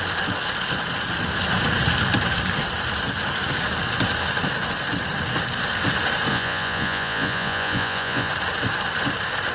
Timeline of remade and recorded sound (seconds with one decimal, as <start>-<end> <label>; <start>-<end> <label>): 0.0-6.3 recorded; 6.3-8.3 remade; 8.3-9.5 recorded